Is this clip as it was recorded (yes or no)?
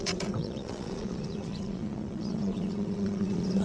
no